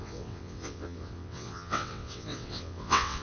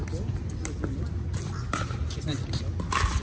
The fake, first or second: first